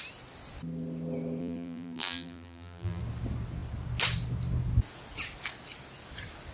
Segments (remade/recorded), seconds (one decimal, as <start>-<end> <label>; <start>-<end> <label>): 0.0-1.4 recorded; 1.4-3.0 remade; 3.0-6.5 recorded

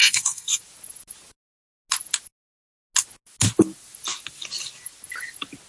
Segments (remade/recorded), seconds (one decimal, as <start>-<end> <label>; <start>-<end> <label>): 0.0-0.6 remade; 0.6-5.7 recorded

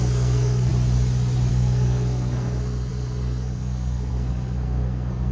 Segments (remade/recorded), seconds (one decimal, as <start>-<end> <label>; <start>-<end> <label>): 0.0-0.7 remade; 0.7-1.5 recorded; 1.5-5.3 remade

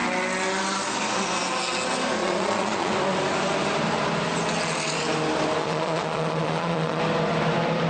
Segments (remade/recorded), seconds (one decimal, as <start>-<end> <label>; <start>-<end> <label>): 0.0-2.2 recorded; 2.2-2.9 remade; 2.9-5.6 recorded; 5.6-7.0 remade; 7.0-7.9 recorded

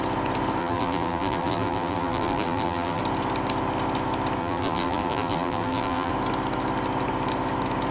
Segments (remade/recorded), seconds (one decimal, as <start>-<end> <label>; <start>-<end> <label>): 0.0-0.6 recorded; 0.6-3.0 remade; 3.0-4.4 recorded; 4.4-6.1 remade; 6.1-7.9 recorded

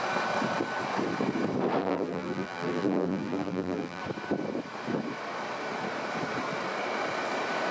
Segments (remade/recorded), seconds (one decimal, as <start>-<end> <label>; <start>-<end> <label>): 0.0-1.8 recorded; 1.8-4.0 remade; 4.0-7.7 recorded